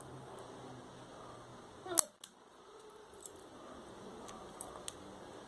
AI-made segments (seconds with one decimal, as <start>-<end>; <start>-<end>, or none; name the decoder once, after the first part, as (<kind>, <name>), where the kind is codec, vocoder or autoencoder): none